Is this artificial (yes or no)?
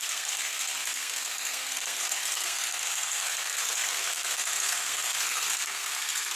yes